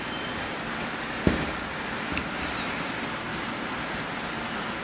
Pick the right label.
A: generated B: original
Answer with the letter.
B